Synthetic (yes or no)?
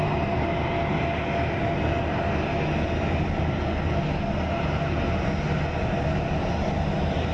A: no